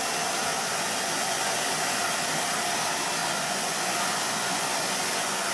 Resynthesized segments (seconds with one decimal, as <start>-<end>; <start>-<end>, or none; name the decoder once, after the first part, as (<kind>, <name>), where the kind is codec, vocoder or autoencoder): 0.5-2.0 (vocoder, Vocos); 3.2-5.5